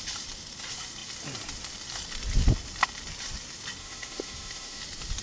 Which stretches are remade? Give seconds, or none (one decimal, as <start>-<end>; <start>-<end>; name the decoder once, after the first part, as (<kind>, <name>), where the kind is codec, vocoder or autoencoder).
3.8-4.8 (autoencoder, DAC-VAE)